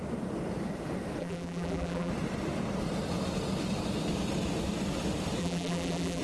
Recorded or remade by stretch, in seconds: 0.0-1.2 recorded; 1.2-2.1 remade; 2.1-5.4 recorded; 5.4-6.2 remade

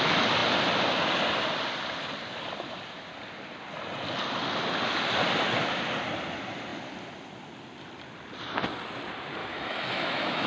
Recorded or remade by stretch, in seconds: 0.0-9.4 recorded; 9.4-10.5 remade